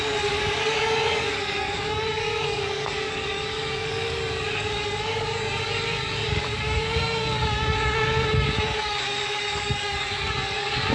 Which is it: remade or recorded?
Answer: remade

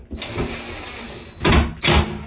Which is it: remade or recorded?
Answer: recorded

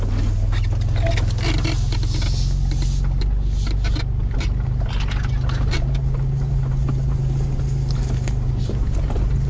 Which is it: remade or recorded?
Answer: recorded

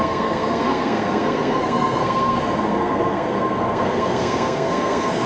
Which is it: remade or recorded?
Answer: remade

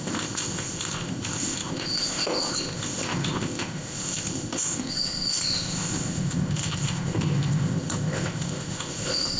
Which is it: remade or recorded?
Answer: remade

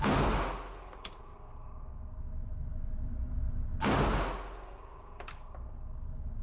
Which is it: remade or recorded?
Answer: recorded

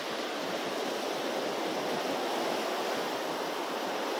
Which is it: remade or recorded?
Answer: recorded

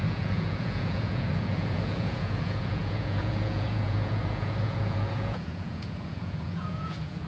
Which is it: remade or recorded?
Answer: remade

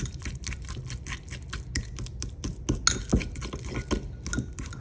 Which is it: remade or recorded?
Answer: recorded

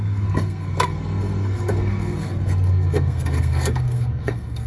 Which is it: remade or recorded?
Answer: remade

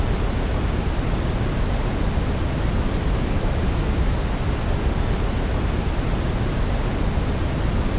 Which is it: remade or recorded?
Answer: recorded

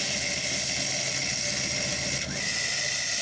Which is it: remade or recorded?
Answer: recorded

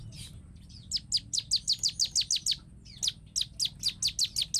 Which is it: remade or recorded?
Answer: recorded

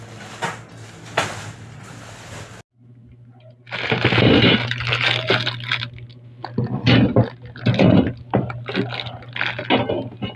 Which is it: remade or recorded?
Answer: recorded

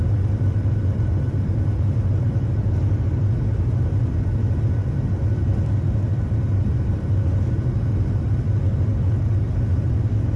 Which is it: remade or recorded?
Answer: remade